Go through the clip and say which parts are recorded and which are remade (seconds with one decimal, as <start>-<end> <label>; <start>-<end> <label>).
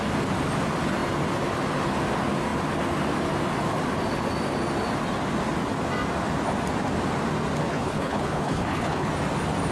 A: 0.0-7.7 recorded; 7.7-9.1 remade; 9.1-9.7 recorded